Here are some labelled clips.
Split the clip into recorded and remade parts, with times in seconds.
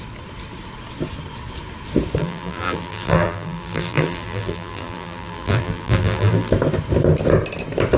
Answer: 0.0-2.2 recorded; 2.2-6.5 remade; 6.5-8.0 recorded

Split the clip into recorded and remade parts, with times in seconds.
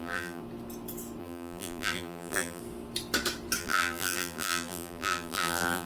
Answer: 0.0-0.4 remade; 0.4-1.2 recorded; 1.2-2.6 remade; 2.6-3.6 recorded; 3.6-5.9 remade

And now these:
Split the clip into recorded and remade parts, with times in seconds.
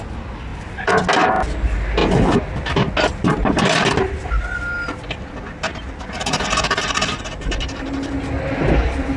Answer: 0.0-0.5 recorded; 0.5-1.0 remade; 1.0-9.2 recorded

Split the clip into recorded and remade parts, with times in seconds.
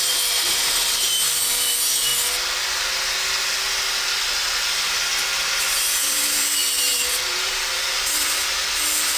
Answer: 0.0-2.1 remade; 2.1-5.8 recorded; 5.8-9.2 remade